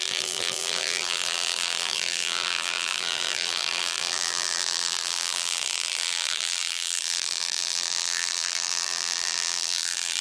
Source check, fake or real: fake